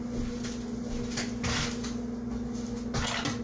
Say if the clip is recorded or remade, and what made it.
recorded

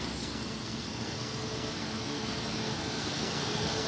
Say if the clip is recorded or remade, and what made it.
remade, codec, SNAC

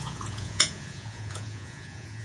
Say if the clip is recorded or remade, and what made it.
remade, vocoder, Vocos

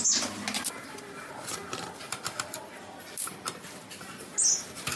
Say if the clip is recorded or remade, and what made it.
recorded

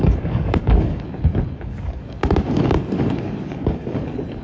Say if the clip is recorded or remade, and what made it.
remade, codec, DAC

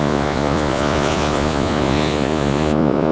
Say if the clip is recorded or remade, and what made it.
remade, vocoder, Vocos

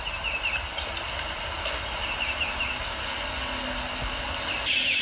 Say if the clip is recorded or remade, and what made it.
recorded